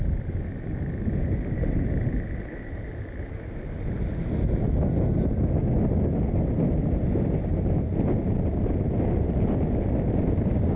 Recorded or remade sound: recorded